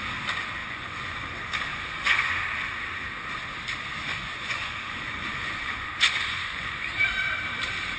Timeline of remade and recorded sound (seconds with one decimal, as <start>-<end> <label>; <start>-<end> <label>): 0.0-0.6 recorded; 0.6-1.2 remade; 1.2-1.7 recorded; 1.7-2.3 remade; 2.3-4.1 recorded; 4.1-6.9 remade; 6.9-8.0 recorded